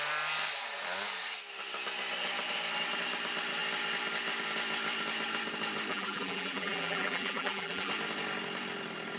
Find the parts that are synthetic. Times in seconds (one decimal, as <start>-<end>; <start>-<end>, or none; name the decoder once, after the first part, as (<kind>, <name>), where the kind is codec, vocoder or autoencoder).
5.9-7.9 (vocoder, BigVGAN v2)